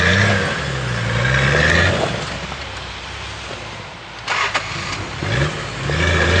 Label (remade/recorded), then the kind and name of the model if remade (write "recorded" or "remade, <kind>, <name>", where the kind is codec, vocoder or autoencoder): recorded